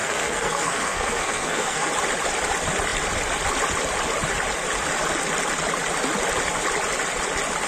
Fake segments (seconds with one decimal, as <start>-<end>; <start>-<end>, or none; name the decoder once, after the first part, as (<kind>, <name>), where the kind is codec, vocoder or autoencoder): 0.0-1.9 (codec, SNAC)